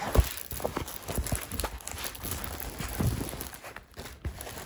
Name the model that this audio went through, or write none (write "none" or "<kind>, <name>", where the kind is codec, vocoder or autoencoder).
none